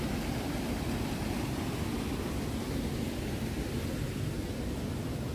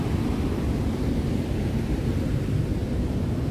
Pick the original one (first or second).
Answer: first